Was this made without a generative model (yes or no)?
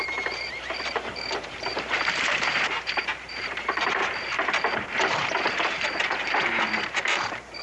no